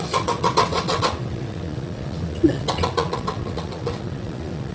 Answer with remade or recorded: remade